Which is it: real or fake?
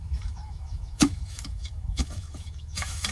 fake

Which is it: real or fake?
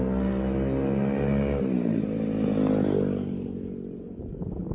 real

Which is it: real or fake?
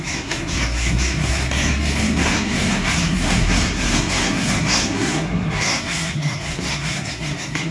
fake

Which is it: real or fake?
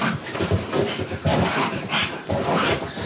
real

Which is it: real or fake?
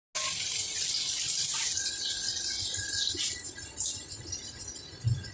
real